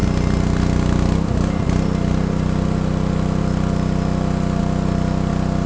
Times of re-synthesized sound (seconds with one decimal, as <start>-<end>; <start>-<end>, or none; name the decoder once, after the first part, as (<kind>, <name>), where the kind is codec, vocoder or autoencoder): none